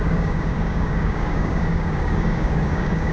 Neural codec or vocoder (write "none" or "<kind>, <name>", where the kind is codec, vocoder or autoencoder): codec, DAC